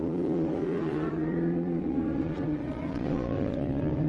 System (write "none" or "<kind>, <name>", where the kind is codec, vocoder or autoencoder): vocoder, Vocos